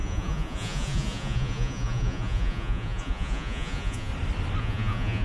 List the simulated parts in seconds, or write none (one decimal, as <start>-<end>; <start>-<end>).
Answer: 0.0-4.1; 4.6-5.2